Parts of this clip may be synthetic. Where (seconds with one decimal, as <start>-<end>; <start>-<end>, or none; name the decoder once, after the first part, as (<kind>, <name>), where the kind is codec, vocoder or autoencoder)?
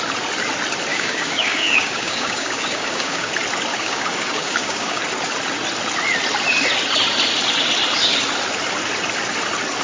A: 0.9-3.3 (codec, DAC); 3.7-5.0